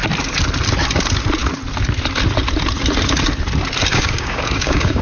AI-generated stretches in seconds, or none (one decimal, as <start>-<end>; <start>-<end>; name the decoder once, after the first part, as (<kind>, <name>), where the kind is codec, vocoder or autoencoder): 3.9-5.0 (codec, DAC)